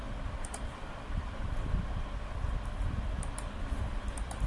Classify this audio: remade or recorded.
remade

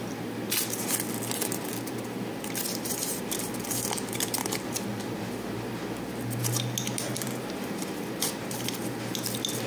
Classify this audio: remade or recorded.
recorded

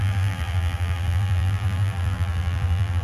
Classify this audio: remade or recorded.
remade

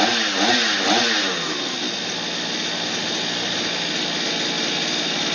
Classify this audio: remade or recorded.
recorded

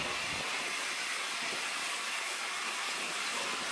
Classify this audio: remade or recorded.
recorded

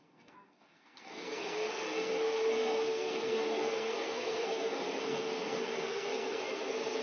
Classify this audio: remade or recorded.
remade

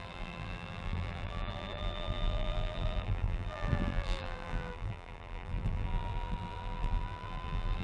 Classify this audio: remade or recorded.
remade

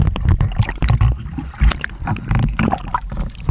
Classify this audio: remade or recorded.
remade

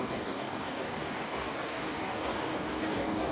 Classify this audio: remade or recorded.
remade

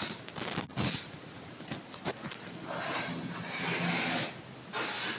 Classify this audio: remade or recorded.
recorded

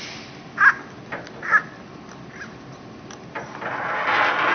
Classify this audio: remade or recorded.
recorded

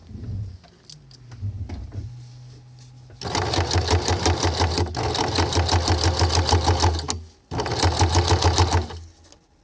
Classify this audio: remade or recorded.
recorded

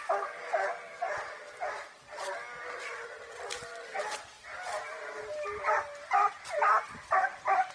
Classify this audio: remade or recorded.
recorded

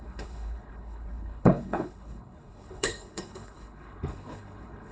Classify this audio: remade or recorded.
remade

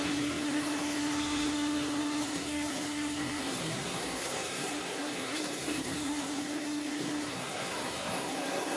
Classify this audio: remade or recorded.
remade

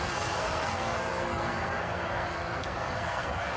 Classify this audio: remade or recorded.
remade